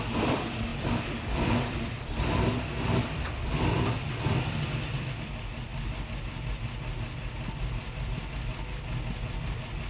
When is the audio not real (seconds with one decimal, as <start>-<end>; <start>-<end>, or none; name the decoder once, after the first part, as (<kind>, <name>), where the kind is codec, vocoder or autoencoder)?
0.0-5.7 (vocoder, BigVGAN v2)

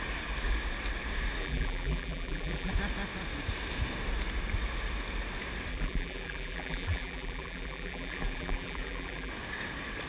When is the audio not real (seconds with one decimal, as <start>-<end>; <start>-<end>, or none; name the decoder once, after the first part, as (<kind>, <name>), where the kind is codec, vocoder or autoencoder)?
1.4-2.7 (vocoder, BigVGAN v2); 5.7-9.3

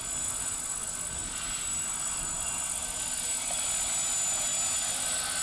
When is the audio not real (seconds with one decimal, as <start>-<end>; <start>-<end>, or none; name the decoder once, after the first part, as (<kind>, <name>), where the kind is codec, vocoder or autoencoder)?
none

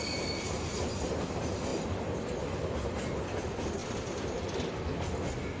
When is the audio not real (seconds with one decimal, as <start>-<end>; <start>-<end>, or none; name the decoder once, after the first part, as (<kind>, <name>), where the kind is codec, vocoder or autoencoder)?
3.8-4.7 (vocoder, BigVGAN v2)

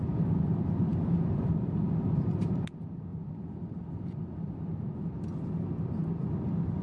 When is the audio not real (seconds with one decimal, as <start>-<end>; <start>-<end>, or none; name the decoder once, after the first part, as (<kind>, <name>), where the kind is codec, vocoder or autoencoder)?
0.9-1.8 (vocoder, BigVGAN v2); 3.1-4.6

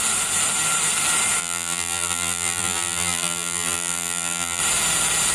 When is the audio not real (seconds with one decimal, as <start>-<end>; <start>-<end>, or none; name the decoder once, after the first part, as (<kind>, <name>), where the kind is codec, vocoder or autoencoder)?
1.4-4.6 (vocoder, BigVGAN v2)

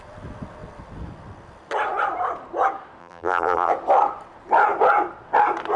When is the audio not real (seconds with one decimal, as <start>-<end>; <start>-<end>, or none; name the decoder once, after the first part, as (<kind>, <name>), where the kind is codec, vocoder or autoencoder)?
3.0-3.7 (vocoder, BigVGAN v2)